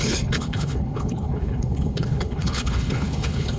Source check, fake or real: fake